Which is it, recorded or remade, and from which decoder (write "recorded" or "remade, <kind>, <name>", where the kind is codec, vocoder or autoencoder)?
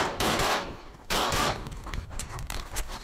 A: remade, codec, DAC